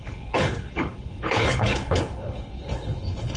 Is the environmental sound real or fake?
fake